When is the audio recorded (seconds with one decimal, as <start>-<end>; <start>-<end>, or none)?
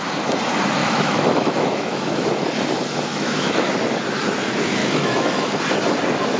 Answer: 0.0-0.8; 2.3-3.1; 3.7-4.8; 5.6-6.4